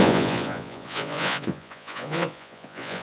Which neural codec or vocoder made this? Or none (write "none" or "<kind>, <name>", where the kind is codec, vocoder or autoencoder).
vocoder, Vocos